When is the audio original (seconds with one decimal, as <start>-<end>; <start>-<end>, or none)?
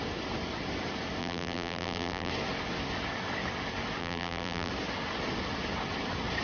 0.0-1.2; 2.3-4.0; 4.7-6.4